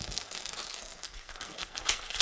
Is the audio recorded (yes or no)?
no